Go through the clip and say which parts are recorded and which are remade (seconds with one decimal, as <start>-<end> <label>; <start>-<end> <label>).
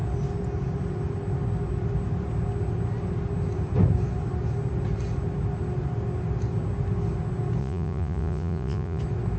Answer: 0.0-7.6 recorded; 7.6-9.0 remade; 9.0-9.4 recorded